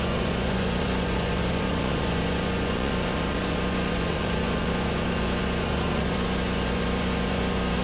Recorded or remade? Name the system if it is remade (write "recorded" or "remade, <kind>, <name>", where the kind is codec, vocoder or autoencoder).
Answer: remade, vocoder, Vocos